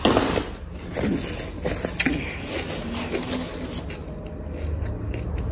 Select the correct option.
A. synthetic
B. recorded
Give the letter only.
B